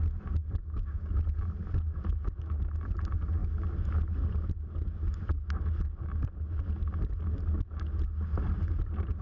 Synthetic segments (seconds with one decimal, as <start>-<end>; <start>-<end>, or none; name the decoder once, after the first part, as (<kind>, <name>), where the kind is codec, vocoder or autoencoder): 0.6-1.1 (codec, DAC)